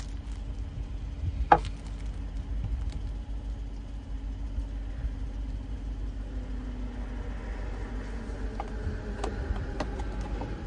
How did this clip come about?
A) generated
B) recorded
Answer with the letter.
B